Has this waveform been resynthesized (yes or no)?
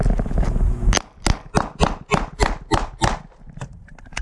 no